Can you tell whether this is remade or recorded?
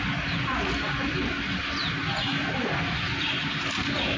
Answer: recorded